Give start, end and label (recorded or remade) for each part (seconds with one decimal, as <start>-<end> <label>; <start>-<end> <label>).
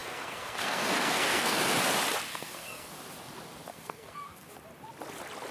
0.0-1.6 remade; 1.6-2.3 recorded; 2.3-2.9 remade; 2.9-3.7 recorded; 3.7-4.5 remade; 4.5-5.5 recorded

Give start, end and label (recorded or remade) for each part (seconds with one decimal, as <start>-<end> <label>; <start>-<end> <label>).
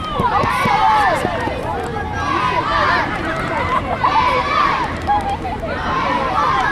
0.0-1.9 remade; 1.9-3.8 recorded; 3.8-6.7 remade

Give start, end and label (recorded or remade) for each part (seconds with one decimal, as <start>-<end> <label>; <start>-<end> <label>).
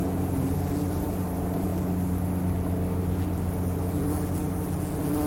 0.0-0.9 recorded; 0.9-1.7 remade; 1.7-5.3 recorded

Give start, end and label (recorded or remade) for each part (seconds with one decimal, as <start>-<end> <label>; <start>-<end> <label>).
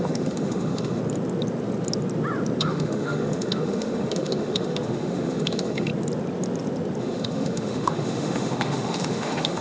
0.0-1.0 remade; 1.0-2.6 recorded; 2.6-5.9 remade; 5.9-7.0 recorded; 7.0-9.6 remade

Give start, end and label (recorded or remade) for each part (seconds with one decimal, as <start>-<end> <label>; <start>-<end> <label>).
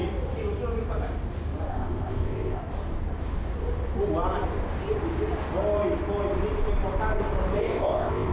0.0-1.7 recorded; 1.7-2.6 remade; 2.6-7.6 recorded; 7.6-8.3 remade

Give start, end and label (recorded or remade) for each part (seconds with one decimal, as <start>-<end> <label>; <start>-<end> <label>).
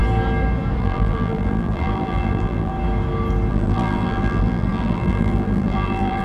0.0-0.8 recorded; 0.8-2.7 remade; 2.7-3.5 recorded; 3.5-6.2 remade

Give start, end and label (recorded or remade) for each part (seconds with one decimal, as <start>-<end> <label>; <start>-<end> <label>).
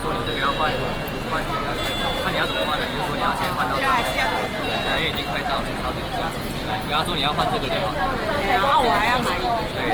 0.0-9.9 recorded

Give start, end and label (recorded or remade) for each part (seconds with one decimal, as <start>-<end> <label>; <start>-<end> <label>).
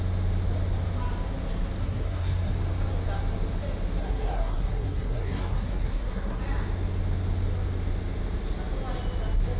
0.0-1.8 recorded; 1.8-2.5 remade; 2.5-4.0 recorded; 4.0-6.4 remade; 6.4-9.6 recorded